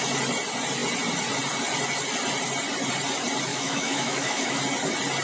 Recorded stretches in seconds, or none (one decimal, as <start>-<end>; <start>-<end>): 0.0-3.5; 4.6-5.2